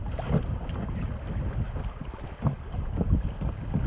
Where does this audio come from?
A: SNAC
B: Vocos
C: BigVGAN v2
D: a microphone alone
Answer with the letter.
D